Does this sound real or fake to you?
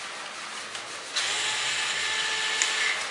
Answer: real